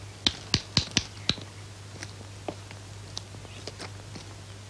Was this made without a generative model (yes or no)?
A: yes